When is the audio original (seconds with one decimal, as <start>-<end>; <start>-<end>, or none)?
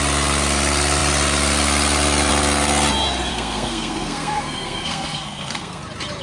0.0-3.3; 5.8-6.2